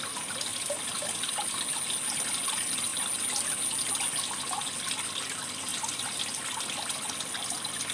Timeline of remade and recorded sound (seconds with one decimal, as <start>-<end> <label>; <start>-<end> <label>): 0.0-0.5 recorded; 0.5-1.6 remade; 1.6-5.7 recorded; 5.7-6.2 remade; 6.2-7.9 recorded